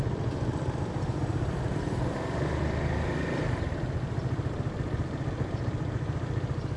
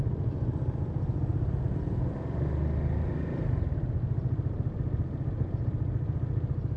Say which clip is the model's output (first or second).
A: first